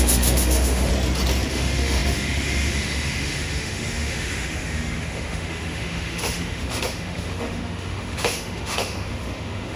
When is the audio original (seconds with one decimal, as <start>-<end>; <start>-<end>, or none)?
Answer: 0.9-1.5